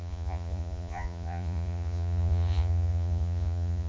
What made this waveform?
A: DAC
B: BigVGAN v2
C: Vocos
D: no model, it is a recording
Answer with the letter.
C